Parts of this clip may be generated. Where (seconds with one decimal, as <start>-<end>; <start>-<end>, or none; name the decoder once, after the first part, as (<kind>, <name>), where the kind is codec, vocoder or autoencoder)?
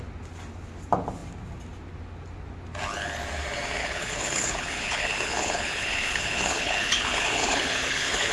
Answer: 3.8-8.3 (codec, HILCodec)